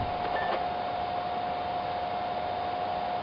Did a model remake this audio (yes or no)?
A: no